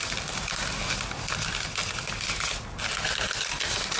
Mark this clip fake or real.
real